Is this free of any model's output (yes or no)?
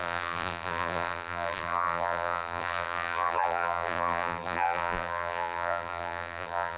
no